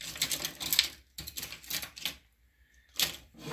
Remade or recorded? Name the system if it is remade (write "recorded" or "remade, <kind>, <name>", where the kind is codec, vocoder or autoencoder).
recorded